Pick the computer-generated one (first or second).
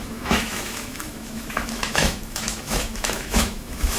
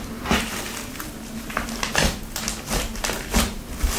first